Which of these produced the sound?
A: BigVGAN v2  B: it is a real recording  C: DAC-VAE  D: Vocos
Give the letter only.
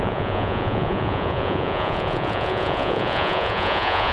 D